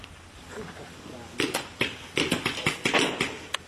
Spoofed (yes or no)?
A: no